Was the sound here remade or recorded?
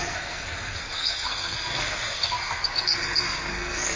remade